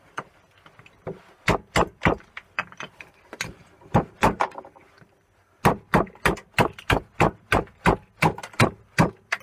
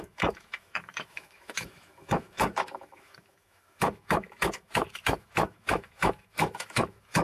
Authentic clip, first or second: first